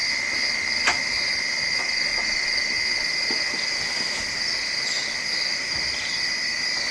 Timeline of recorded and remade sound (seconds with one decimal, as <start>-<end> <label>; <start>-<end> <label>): 0.0-5.5 recorded; 5.5-6.3 remade; 6.3-6.9 recorded